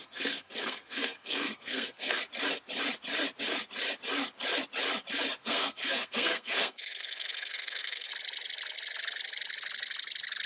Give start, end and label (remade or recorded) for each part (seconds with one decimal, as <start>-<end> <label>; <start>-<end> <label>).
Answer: 0.0-2.2 remade; 2.2-5.4 recorded; 5.4-8.1 remade; 8.1-10.5 recorded